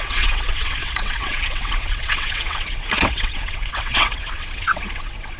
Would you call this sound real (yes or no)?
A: no